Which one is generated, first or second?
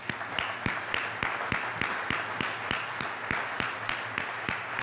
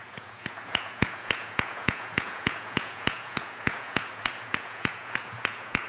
second